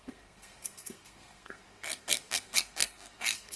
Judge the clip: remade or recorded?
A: remade